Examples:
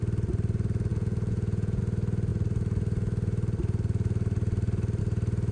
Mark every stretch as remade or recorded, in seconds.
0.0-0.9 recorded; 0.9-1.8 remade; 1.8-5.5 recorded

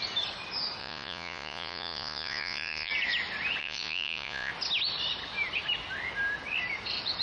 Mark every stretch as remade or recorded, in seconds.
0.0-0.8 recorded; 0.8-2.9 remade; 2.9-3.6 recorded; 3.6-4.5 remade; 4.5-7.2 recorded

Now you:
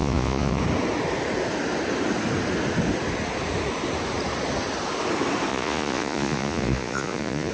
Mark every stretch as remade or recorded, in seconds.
0.0-0.6 remade; 0.6-5.5 recorded; 5.5-7.5 remade